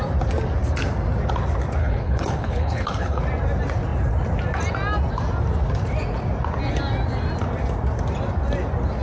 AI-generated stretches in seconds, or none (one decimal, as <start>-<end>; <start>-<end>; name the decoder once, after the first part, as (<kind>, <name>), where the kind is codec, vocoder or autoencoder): 1.8-3.2 (codec, HILCodec)